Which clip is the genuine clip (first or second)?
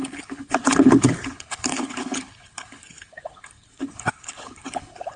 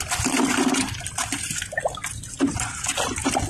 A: second